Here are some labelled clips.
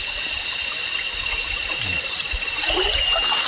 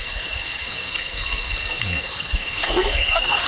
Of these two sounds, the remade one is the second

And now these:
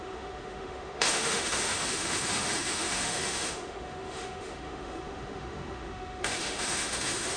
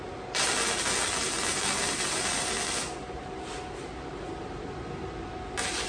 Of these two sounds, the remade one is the first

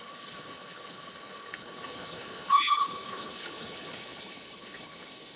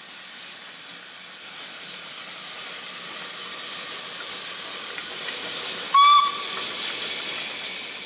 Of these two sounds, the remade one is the first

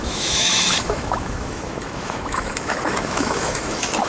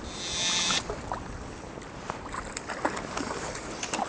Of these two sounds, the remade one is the first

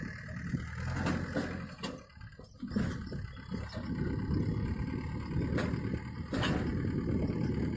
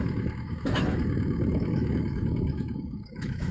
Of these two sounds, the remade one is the second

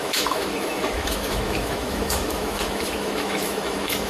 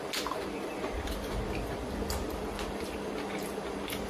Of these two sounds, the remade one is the first